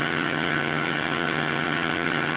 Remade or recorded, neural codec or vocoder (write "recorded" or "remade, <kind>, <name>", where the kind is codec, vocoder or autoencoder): remade, vocoder, HiFi-GAN